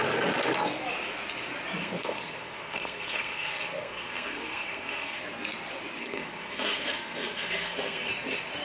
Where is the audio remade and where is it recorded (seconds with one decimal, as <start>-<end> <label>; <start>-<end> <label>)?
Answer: 0.0-1.8 recorded; 1.8-5.2 remade; 5.2-6.0 recorded; 6.0-8.1 remade; 8.1-8.6 recorded